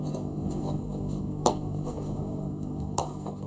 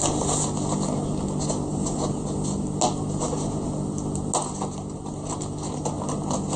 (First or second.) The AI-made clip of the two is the first